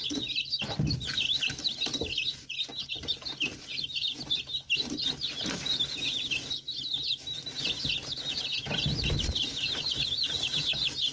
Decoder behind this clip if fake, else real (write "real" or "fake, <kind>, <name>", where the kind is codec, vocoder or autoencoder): real